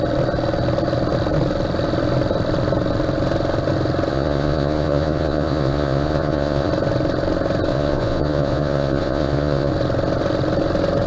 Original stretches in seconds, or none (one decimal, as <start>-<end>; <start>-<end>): 0.0-4.1; 6.7-7.7; 9.7-11.1